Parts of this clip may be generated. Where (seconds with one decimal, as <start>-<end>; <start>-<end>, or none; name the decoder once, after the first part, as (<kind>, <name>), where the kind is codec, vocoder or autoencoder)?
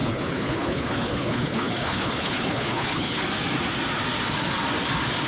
0.0-3.2 (codec, HILCodec)